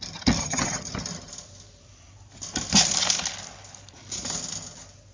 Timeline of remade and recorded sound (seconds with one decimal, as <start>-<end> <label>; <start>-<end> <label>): 0.0-0.4 recorded; 0.4-0.9 remade; 0.9-5.1 recorded